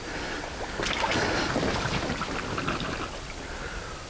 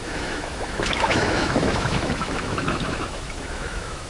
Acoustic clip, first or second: first